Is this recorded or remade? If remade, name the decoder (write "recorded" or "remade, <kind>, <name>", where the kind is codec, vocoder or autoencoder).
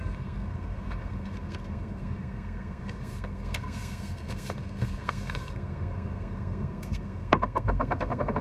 remade, codec, SNAC